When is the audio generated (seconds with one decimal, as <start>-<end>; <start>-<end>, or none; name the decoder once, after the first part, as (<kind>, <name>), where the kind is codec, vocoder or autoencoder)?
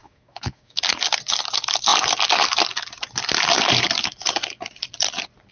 0.0-0.8 (autoencoder, DAC-VAE)